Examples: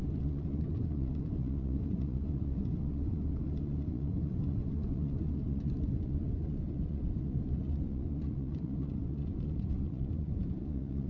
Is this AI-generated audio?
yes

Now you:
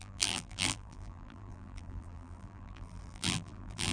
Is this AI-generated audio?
yes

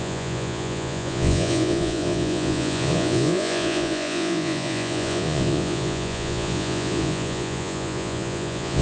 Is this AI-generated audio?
yes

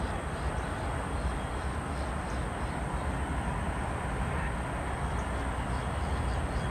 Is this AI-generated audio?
no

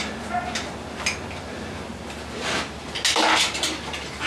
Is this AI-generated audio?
no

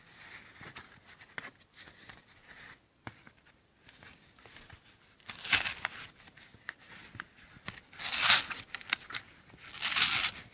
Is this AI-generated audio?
no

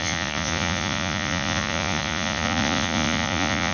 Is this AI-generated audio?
yes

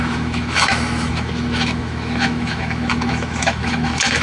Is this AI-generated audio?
yes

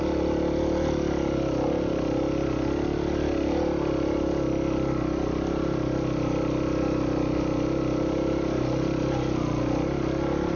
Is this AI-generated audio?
no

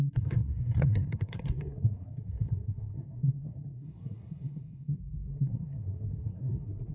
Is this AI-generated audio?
yes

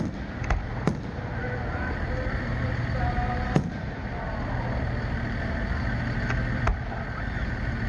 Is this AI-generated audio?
no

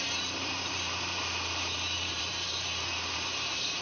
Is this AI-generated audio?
yes